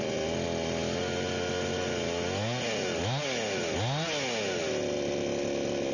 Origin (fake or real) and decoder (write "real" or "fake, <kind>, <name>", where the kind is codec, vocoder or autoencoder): real